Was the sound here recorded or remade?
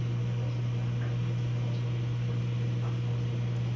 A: recorded